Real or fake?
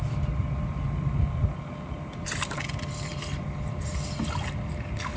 real